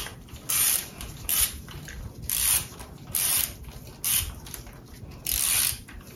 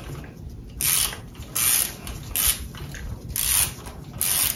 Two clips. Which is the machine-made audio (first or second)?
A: first